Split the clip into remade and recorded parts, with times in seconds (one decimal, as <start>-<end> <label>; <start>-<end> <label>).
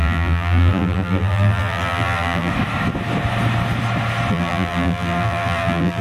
0.0-2.5 remade; 2.5-4.3 recorded; 4.3-6.0 remade